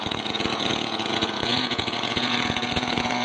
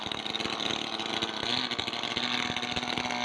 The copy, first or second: first